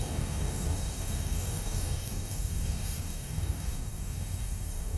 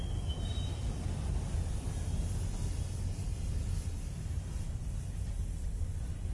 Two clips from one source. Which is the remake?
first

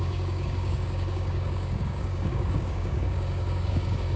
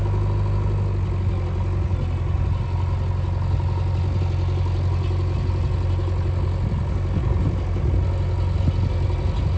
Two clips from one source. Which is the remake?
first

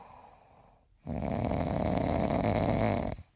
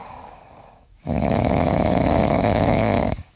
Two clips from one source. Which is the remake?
second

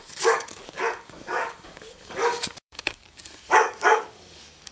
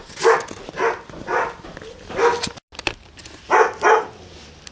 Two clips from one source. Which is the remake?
first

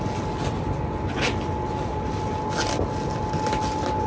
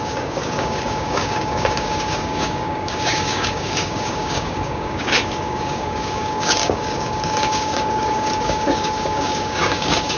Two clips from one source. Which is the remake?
second